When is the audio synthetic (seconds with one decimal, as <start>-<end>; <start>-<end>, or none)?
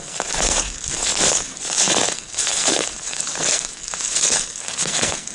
0.0-5.3